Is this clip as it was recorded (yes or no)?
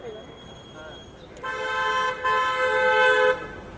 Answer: yes